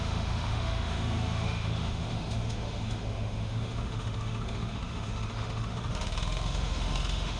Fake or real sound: fake